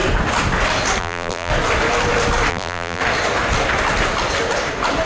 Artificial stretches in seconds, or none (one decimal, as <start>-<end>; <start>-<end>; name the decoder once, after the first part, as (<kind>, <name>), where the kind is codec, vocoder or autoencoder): 1.0-1.5 (vocoder, BigVGAN v2); 2.5-3.0